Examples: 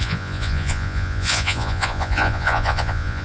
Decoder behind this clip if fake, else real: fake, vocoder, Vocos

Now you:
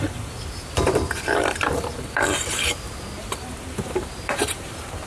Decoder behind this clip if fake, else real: fake, vocoder, BigVGAN v2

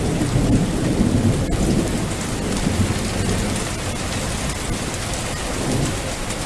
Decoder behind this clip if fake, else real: real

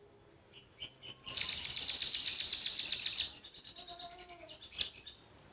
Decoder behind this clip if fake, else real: real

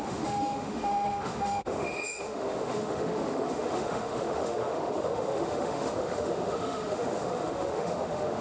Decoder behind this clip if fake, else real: fake, autoencoder, DAC-VAE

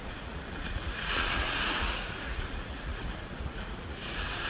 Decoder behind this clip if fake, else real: fake, vocoder, Vocos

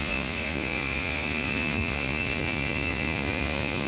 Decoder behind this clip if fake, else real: fake, vocoder, Vocos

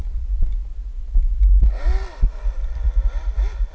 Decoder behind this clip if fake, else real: real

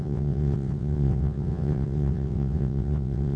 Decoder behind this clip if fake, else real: fake, vocoder, WaveNeXt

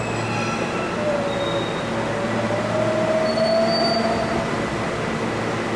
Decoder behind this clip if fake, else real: real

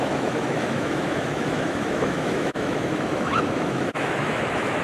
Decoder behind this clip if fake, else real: fake, autoencoder, DAC-VAE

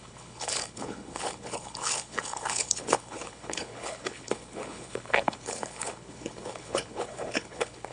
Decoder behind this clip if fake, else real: fake, codec, HILCodec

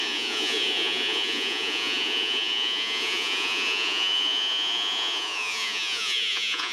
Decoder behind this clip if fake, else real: fake, vocoder, Vocos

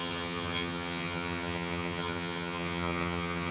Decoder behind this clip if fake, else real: fake, vocoder, HiFi-GAN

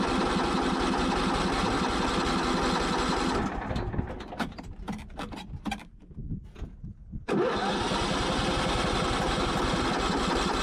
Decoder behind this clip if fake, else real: real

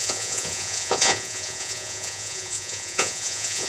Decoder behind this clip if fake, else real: fake, vocoder, Vocos